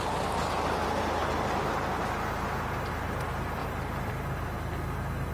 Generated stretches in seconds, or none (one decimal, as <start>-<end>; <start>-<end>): none